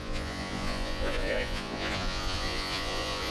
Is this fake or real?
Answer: fake